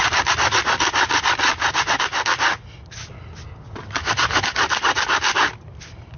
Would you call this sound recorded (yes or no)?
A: yes